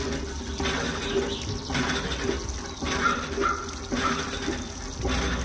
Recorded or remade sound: recorded